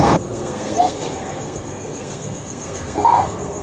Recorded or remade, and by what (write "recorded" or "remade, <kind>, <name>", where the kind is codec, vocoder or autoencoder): remade, codec, SNAC